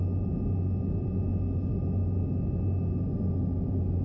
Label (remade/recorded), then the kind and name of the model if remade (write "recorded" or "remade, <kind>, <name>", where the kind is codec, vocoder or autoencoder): recorded